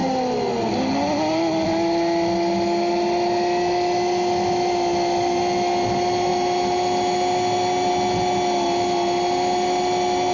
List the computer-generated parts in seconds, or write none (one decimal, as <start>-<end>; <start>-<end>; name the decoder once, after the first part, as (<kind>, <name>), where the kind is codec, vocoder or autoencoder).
none